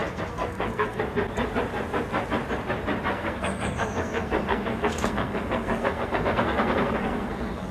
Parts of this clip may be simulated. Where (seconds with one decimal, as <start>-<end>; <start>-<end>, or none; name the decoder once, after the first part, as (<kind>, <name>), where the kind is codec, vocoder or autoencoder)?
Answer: 0.0-1.0 (codec, SNAC); 3.1-7.7